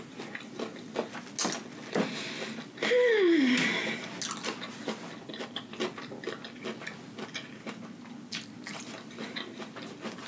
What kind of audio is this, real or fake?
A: real